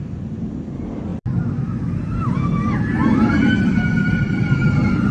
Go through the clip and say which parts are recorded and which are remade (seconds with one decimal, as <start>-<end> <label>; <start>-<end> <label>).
0.0-1.1 remade; 1.1-4.2 recorded; 4.2-5.1 remade

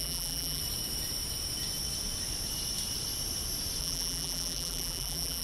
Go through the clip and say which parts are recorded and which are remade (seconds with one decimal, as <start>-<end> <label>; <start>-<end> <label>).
0.0-0.6 remade; 0.6-3.8 recorded; 3.8-5.4 remade

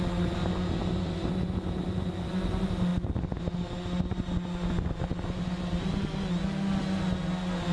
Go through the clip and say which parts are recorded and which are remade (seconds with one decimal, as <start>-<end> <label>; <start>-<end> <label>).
0.0-7.7 recorded

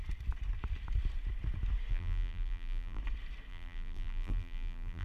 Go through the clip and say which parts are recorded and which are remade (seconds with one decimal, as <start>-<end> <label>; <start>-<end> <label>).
0.0-1.9 recorded; 1.9-3.0 remade; 3.0-3.5 recorded; 3.5-5.0 remade

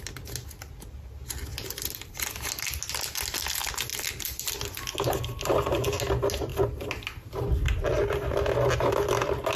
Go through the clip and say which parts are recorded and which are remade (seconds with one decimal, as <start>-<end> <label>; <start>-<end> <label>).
0.0-1.5 recorded; 1.5-2.2 remade; 2.2-3.9 recorded; 3.9-4.8 remade; 4.8-9.6 recorded

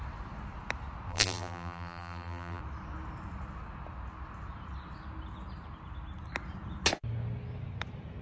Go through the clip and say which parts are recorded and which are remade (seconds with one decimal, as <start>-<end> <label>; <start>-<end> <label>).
0.0-1.1 recorded; 1.1-2.6 remade; 2.6-8.2 recorded

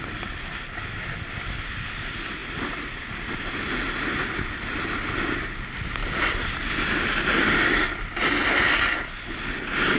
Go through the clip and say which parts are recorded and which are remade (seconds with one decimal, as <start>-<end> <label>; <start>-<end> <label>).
0.0-2.4 recorded; 2.4-3.8 remade; 3.8-6.0 recorded; 6.0-7.4 remade; 7.4-10.0 recorded